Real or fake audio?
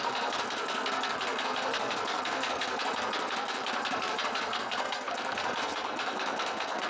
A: fake